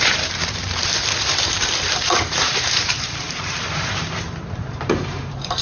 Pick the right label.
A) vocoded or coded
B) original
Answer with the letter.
A